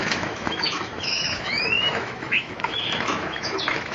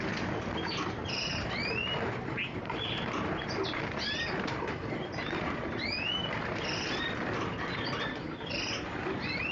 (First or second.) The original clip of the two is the second